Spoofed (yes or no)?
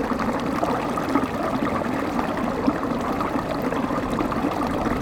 no